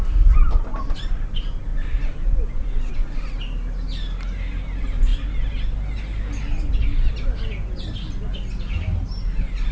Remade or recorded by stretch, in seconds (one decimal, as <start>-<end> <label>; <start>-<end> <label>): 0.0-9.7 recorded